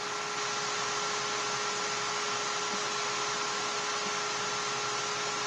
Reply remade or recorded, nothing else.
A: recorded